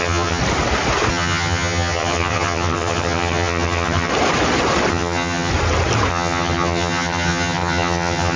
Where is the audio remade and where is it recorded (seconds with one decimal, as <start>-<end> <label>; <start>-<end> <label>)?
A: 0.0-0.4 remade; 0.4-1.1 recorded; 1.1-4.1 remade; 4.1-4.9 recorded; 4.9-5.5 remade; 5.5-6.1 recorded; 6.1-8.4 remade